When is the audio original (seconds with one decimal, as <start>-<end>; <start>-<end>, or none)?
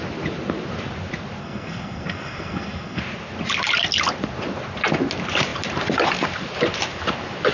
0.0-1.4; 3.0-7.5